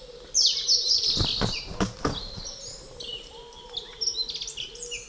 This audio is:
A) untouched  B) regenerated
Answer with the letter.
A